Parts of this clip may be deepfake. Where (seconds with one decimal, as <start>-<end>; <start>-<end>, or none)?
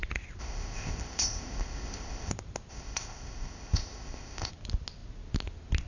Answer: 0.4-2.3; 2.7-4.5